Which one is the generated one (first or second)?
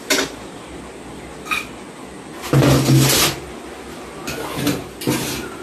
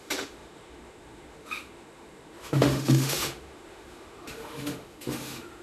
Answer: second